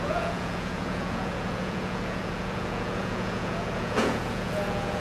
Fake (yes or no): yes